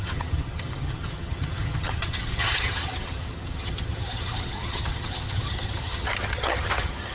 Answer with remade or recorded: remade